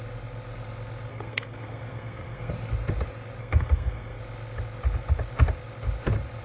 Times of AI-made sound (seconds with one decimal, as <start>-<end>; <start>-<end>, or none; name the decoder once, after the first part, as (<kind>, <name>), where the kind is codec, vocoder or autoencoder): 1.1-2.5 (codec, SNAC); 3.4-4.2